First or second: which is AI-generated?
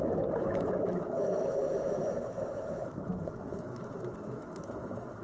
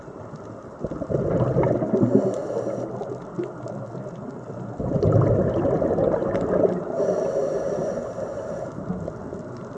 first